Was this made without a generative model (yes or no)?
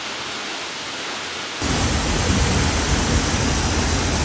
yes